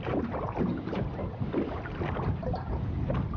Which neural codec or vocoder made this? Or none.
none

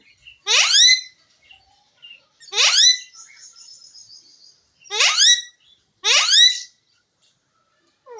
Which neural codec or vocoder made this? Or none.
none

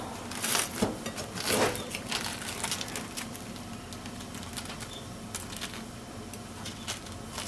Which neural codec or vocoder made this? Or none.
none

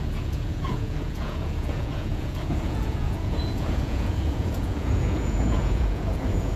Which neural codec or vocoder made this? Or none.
vocoder, Vocos